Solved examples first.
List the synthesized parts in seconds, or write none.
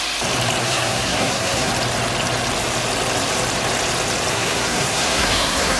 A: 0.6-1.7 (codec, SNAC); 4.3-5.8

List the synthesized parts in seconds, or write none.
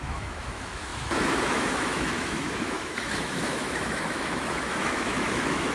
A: 0.0-5.7 (autoencoder, DAC-VAE)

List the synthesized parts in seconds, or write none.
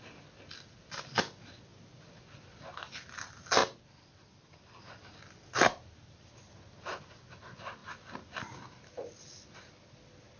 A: none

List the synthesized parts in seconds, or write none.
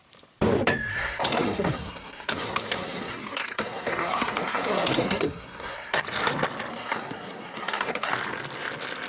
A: 0.9-6.0 (codec, SNAC); 6.7-8.1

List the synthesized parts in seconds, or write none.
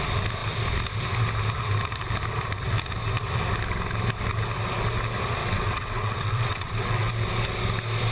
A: 5.4-7.1 (vocoder, WaveNeXt)